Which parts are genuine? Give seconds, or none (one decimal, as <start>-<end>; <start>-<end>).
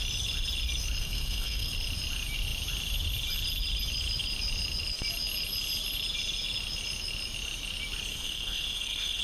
0.0-1.0; 1.7-8.1